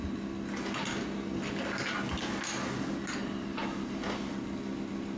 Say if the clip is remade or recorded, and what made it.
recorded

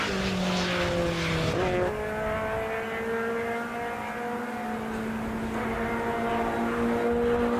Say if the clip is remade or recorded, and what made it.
recorded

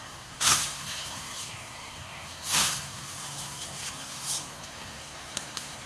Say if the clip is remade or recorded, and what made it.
remade, codec, SNAC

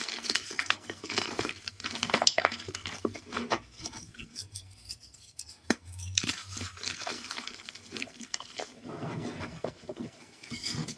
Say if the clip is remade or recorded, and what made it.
remade, codec, SNAC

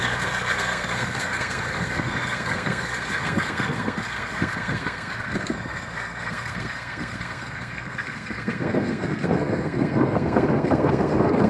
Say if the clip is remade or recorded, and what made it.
remade, codec, SNAC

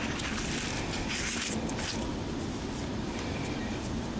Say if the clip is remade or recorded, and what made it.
recorded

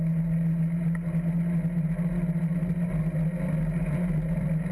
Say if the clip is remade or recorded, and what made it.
recorded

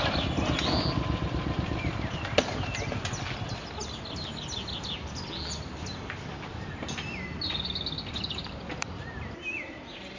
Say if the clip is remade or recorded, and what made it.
recorded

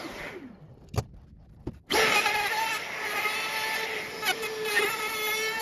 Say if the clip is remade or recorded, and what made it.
recorded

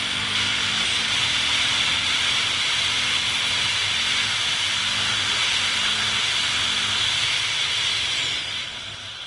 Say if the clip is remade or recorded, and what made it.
recorded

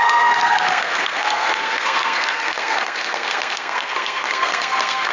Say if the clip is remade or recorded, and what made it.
remade, codec, SNAC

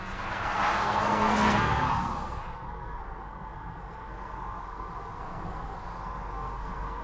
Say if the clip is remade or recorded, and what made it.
remade, codec, SNAC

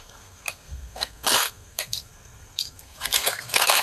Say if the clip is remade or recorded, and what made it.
remade, codec, SNAC